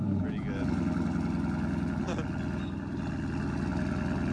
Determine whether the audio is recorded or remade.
recorded